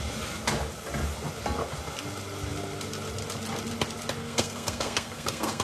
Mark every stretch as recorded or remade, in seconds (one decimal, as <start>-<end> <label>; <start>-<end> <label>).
0.0-4.2 recorded; 4.2-5.6 remade